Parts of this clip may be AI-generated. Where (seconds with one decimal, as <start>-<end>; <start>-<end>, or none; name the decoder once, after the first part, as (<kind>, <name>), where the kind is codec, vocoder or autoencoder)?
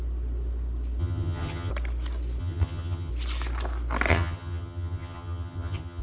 1.0-1.7 (vocoder, HiFi-GAN); 2.4-3.1; 4.1-6.0